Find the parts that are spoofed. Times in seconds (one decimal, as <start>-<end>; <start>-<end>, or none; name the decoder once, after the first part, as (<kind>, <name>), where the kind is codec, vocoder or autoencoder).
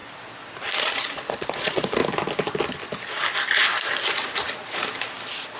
0.8-2.0 (vocoder, Vocos)